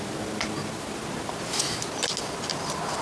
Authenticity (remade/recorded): recorded